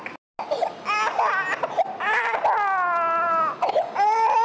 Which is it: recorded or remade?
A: recorded